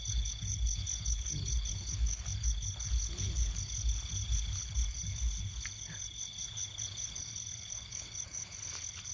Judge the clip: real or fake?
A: fake